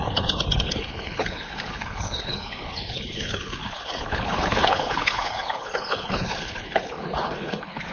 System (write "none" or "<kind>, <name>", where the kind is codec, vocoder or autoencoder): codec, HILCodec